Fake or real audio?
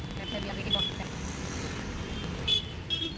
real